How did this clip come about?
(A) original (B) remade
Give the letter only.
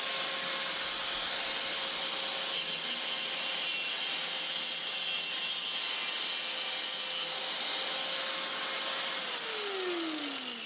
A